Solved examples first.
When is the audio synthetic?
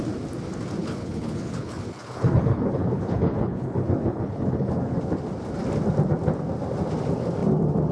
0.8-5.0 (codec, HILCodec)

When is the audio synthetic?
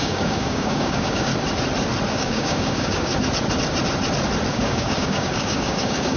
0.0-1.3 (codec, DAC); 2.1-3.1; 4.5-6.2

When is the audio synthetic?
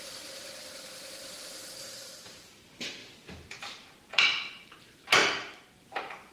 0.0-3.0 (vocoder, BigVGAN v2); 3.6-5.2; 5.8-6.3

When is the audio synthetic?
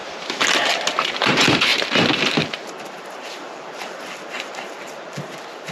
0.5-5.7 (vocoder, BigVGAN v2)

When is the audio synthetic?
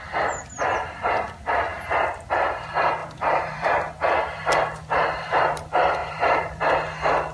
3.0-3.9 (vocoder, BigVGAN v2); 6.0-6.6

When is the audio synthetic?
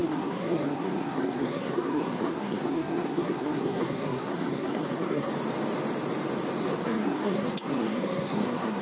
0.0-5.3 (codec, SNAC); 6.6-8.8